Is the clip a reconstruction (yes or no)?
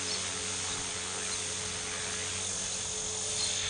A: no